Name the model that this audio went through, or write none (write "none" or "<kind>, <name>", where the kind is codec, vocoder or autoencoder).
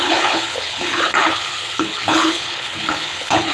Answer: codec, HILCodec